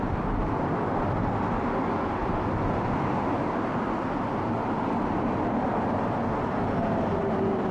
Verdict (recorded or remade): recorded